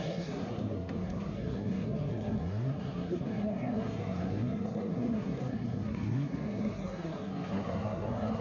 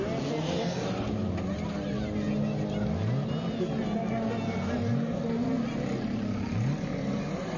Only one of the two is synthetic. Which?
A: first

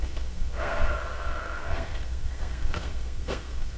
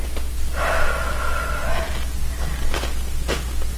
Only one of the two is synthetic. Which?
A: first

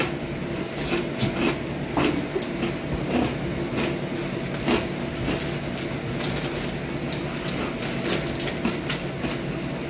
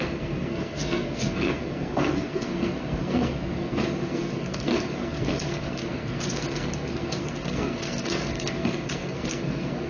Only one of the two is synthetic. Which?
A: second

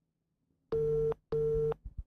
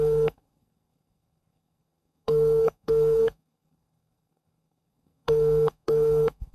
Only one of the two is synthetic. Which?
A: second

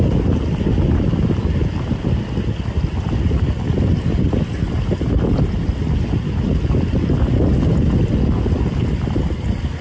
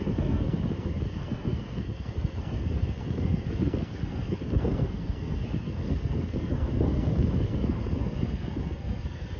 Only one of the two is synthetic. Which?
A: second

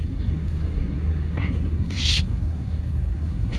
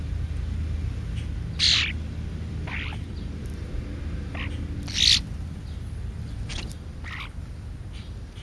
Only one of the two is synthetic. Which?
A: first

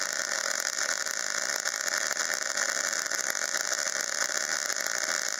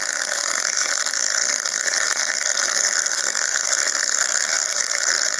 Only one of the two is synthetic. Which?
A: second